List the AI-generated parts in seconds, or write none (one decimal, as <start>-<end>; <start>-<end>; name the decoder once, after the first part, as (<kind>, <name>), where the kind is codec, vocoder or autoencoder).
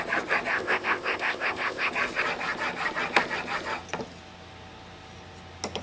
0.5-1.9 (codec, ZipCodec)